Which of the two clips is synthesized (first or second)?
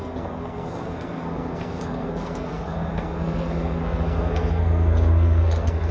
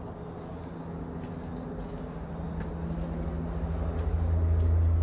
first